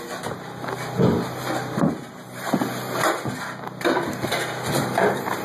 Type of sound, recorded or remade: recorded